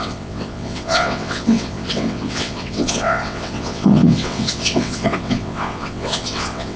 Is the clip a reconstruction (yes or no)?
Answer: yes